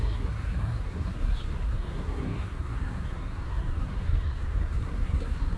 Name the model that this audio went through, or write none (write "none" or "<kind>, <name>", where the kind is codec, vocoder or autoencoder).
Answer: codec, SNAC